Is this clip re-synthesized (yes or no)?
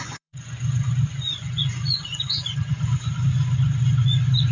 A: yes